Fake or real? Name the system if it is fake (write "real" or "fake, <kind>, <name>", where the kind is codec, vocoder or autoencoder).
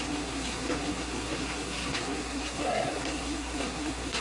fake, codec, SNAC